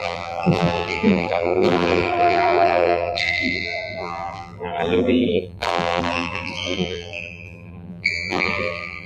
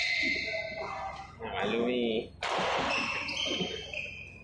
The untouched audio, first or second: second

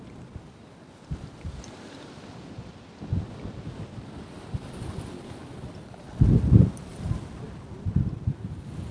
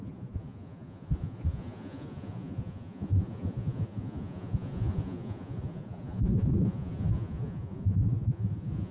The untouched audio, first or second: first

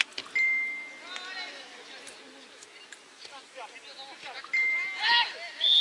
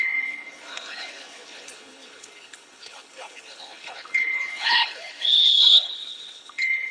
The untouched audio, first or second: first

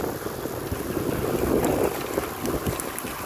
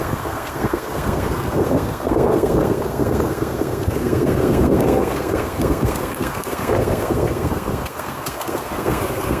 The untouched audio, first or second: first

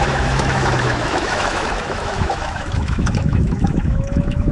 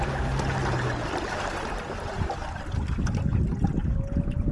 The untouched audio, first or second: second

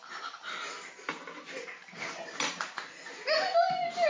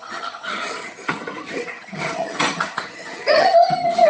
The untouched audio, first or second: first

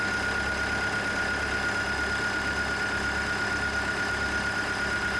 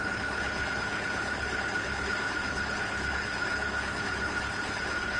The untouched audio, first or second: first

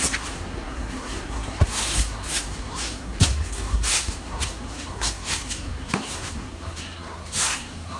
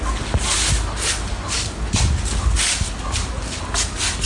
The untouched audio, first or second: second